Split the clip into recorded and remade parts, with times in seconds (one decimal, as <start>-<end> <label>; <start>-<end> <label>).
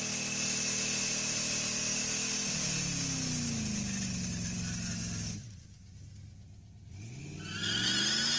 0.0-8.4 recorded